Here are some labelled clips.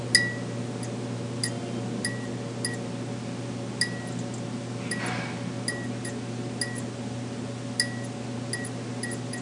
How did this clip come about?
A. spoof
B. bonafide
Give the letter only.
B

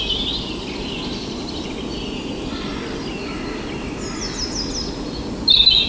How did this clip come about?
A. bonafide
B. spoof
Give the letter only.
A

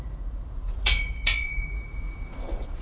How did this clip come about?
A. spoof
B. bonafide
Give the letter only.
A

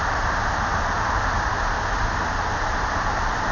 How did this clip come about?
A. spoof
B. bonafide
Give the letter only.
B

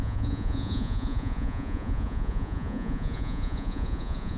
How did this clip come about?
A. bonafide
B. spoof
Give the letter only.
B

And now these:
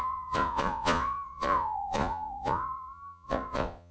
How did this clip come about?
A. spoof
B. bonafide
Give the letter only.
A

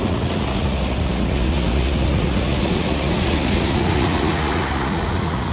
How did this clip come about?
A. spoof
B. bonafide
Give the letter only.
A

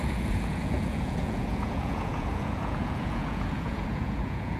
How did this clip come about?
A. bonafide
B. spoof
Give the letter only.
B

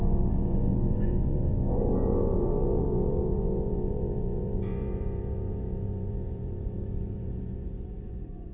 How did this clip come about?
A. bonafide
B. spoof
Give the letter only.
B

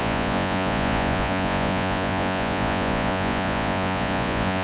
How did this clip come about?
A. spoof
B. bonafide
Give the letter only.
A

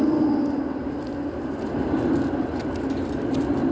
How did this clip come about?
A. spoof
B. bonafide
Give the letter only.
B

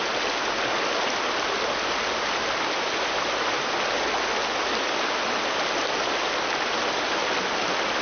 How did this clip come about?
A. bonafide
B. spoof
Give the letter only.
A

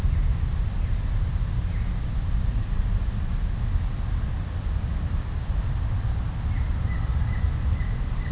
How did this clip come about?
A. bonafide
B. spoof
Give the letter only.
A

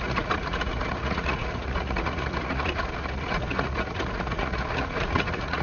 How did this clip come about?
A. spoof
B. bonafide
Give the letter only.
A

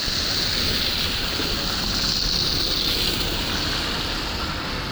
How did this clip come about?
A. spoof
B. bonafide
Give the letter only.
B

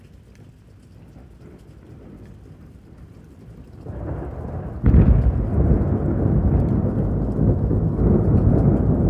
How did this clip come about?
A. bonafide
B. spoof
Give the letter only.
A